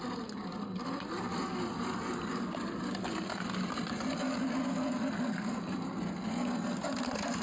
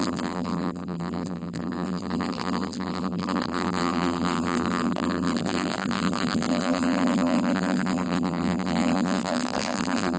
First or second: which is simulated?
second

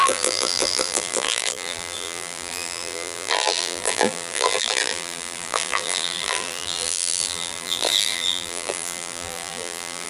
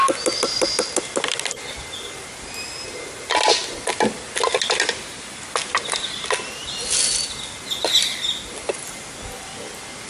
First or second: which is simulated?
first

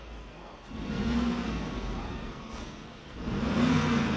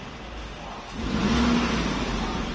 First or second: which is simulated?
first